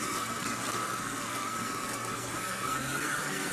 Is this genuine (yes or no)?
no